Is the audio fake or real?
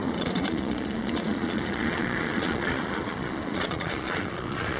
fake